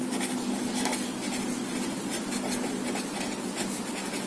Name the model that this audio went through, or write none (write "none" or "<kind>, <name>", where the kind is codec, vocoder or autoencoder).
none